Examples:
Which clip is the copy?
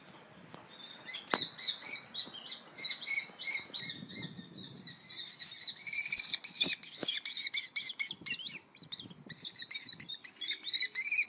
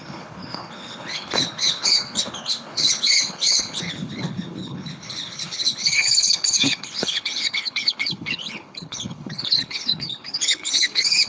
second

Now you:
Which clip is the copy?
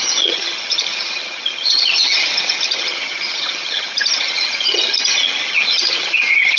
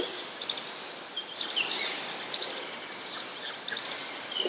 first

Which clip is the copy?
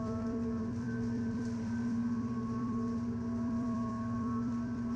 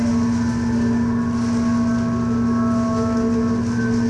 first